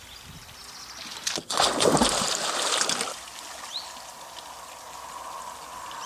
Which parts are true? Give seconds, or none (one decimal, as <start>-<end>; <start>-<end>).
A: 0.0-6.1